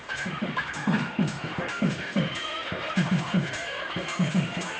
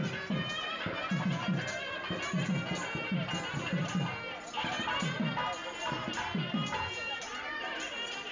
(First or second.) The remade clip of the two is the first